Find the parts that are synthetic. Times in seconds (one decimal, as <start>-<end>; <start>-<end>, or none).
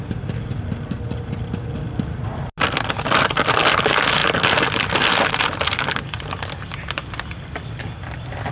none